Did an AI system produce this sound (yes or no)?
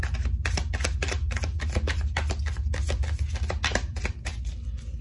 no